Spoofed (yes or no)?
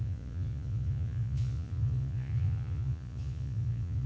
yes